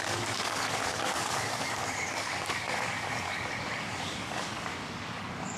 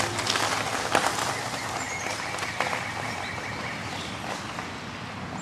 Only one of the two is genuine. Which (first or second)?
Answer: second